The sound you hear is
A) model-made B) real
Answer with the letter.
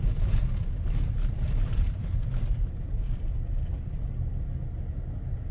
B